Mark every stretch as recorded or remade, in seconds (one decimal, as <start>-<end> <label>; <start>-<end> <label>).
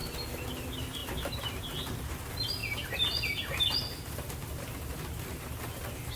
0.0-6.2 recorded